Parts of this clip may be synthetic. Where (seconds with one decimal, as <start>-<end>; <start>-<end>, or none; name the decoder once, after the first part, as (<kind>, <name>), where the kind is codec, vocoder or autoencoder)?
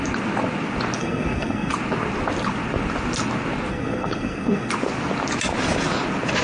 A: 1.0-1.7 (codec, SNAC); 3.7-4.7